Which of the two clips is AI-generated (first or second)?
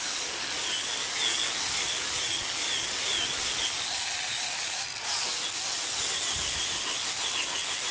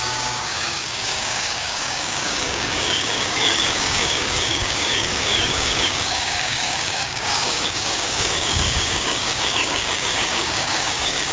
second